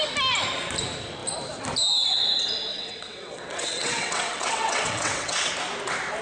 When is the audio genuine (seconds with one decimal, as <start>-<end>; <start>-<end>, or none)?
0.0-2.7; 5.5-6.2